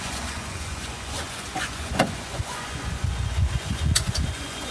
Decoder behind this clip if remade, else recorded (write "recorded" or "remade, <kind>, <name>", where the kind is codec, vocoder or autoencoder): remade, vocoder, Vocos